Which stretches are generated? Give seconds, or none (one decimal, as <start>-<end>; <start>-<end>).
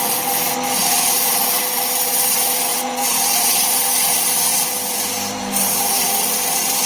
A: 2.7-3.7; 4.5-6.9